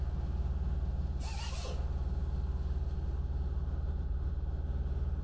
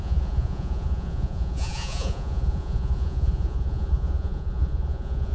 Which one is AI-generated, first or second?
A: second